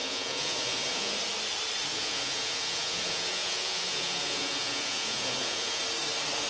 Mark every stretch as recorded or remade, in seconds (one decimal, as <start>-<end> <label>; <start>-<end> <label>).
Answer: 0.0-1.2 remade; 1.2-1.9 recorded; 1.9-5.8 remade; 5.8-6.5 recorded